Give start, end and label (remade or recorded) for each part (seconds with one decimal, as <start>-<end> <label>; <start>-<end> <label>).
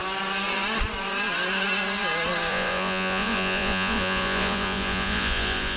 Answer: 0.0-2.5 recorded; 2.5-5.8 remade